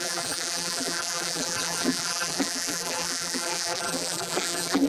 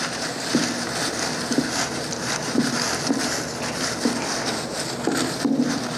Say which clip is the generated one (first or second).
first